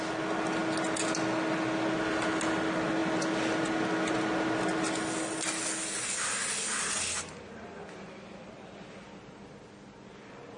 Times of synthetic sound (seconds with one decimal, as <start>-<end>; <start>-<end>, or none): none